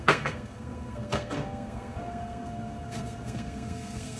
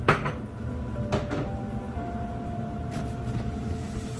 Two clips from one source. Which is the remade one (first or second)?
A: first